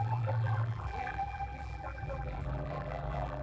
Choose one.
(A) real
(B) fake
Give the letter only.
B